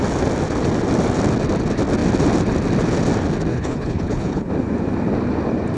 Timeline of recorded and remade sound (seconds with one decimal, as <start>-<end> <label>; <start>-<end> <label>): 0.0-3.5 recorded; 3.5-4.5 remade; 4.5-5.8 recorded

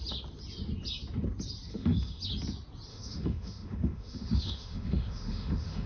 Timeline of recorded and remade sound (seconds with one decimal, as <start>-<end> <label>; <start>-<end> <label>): 0.0-1.7 recorded; 1.7-2.2 remade; 2.2-2.9 recorded; 2.9-5.9 remade

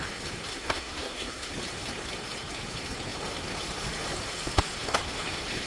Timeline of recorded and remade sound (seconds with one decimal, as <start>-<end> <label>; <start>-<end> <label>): 0.0-0.5 recorded; 0.5-1.5 remade; 1.5-5.7 recorded

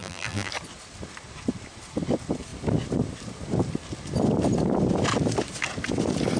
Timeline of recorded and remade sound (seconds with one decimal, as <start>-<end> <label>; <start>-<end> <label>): 0.0-0.5 remade; 0.5-6.4 recorded

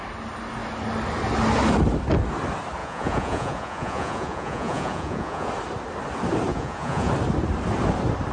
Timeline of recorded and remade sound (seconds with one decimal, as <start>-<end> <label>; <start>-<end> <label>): 0.0-2.8 recorded; 2.8-5.5 remade; 5.5-6.5 recorded; 6.5-7.1 remade; 7.1-8.3 recorded